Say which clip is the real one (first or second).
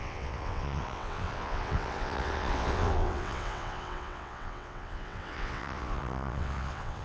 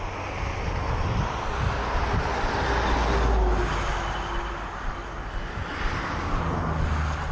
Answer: second